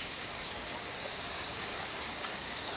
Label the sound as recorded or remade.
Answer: remade